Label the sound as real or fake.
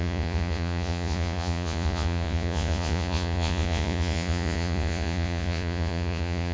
fake